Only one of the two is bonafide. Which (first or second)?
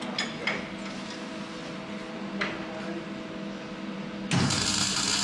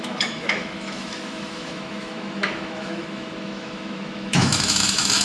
first